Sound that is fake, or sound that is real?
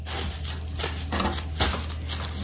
real